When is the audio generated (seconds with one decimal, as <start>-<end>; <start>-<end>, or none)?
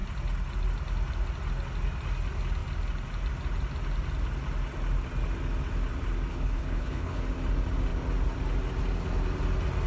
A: 6.3-7.2